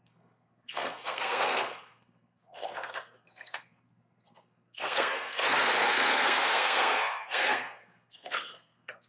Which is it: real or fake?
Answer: fake